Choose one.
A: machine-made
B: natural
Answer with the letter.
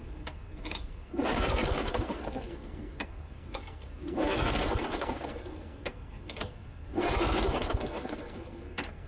A